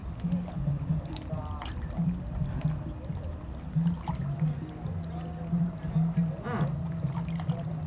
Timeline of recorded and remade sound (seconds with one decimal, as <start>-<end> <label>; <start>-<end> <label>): 0.0-7.9 recorded

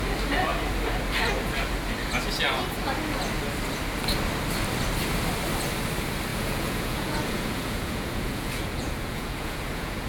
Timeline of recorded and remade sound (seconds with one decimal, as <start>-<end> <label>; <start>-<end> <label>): 0.0-6.3 recorded; 6.3-10.1 remade